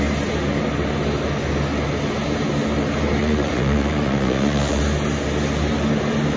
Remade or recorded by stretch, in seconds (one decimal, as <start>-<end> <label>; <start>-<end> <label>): 0.0-3.2 recorded; 3.2-4.8 remade; 4.8-6.4 recorded